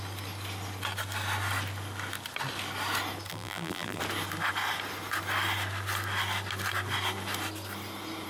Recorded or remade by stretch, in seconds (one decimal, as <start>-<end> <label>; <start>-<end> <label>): 0.0-3.3 recorded; 3.3-4.0 remade; 4.0-8.3 recorded